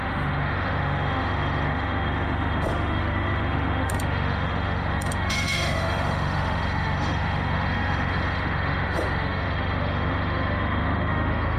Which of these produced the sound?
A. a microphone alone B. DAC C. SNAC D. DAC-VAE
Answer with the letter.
D